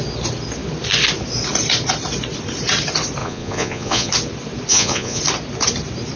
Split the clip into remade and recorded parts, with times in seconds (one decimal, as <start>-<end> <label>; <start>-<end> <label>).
0.0-3.2 recorded; 3.2-4.1 remade; 4.1-4.7 recorded; 4.7-5.2 remade; 5.2-6.2 recorded